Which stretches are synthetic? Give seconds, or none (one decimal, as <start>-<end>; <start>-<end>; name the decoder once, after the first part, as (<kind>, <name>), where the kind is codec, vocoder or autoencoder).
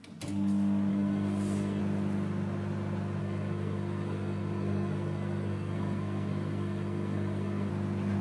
0.9-1.8 (codec, SNAC); 3.2-7.7